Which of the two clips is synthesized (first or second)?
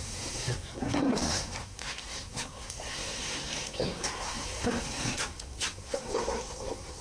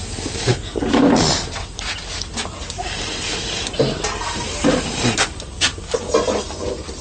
first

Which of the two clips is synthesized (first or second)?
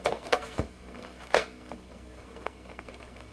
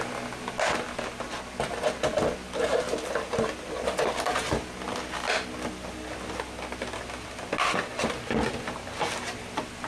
first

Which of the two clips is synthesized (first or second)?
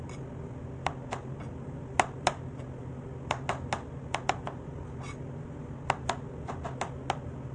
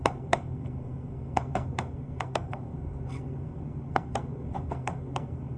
second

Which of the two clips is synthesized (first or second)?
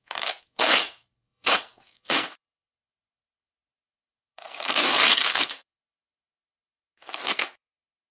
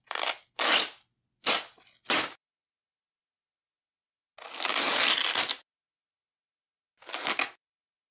first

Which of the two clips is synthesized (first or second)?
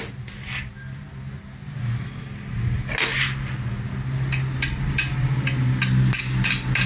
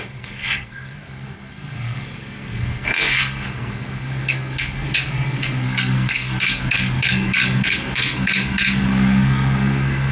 second